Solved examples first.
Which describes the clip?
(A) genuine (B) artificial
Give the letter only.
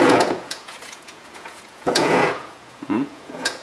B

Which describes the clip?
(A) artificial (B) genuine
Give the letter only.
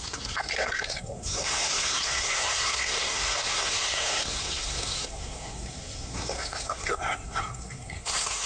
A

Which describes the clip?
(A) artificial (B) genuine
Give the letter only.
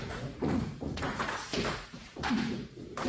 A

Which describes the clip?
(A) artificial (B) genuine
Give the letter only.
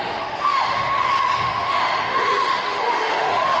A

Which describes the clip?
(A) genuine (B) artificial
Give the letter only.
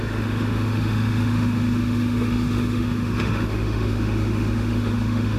B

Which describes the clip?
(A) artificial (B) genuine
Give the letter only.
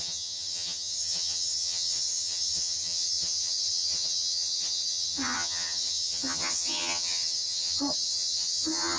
A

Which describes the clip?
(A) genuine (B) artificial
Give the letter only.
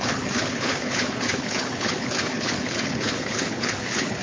B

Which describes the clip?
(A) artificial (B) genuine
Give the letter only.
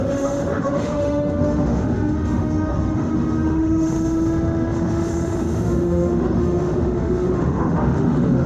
A